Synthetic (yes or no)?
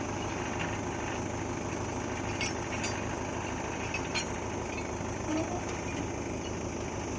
no